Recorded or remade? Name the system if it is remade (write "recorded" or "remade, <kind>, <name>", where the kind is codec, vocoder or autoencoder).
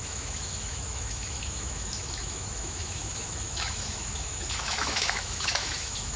remade, autoencoder, DAC-VAE